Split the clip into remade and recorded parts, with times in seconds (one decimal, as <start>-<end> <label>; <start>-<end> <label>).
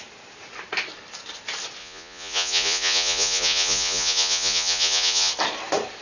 0.0-1.8 recorded; 1.8-5.3 remade; 5.3-6.0 recorded